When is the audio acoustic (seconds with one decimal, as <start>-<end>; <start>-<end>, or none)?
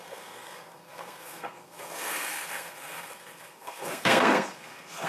none